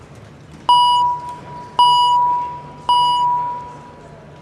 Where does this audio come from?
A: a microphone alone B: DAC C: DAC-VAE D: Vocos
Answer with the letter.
A